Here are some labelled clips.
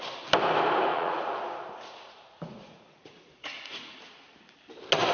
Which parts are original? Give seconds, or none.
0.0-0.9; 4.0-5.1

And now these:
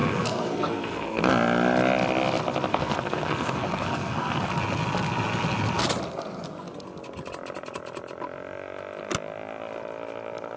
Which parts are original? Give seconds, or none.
1.3-2.7; 4.5-10.6